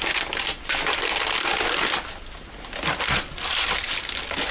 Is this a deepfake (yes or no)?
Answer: no